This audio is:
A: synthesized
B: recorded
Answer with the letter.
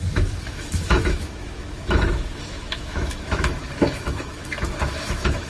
A